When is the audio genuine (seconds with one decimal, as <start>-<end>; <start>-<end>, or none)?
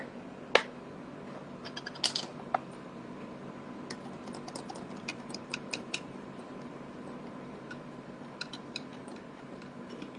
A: 0.0-2.3; 3.4-5.1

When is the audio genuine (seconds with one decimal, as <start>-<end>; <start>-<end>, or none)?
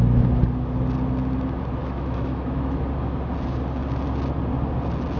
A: 0.0-1.8; 2.8-5.2